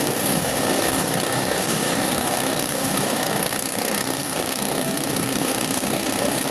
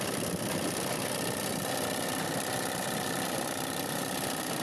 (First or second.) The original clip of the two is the second